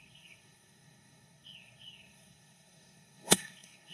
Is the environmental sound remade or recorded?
remade